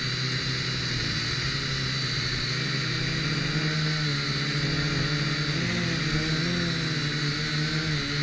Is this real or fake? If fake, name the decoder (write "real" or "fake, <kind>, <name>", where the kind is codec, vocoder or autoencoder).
real